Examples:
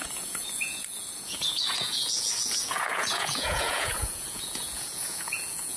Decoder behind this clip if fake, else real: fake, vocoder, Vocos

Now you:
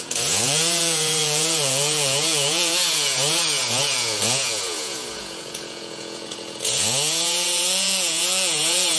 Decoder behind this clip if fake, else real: fake, vocoder, Vocos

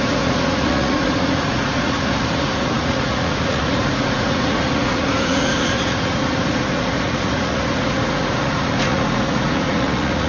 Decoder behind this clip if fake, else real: fake, vocoder, Vocos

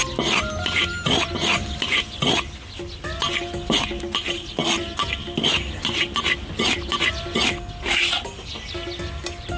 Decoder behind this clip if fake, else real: real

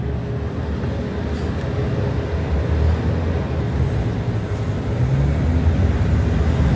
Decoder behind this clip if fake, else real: real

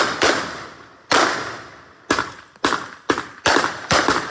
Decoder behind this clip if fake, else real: real